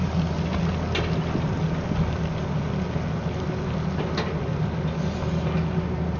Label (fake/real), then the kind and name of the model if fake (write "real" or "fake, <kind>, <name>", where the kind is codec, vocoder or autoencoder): real